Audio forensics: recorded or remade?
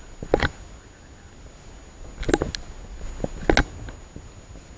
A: recorded